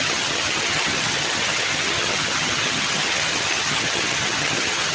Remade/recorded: remade